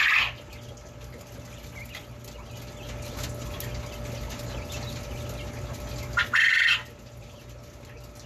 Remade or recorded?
recorded